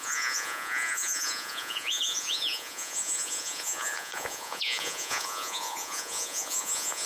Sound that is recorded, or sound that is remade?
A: remade